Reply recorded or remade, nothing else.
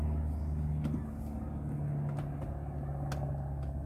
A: recorded